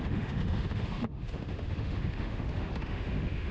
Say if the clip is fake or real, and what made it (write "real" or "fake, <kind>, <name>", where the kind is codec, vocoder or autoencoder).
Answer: fake, autoencoder, DAC-VAE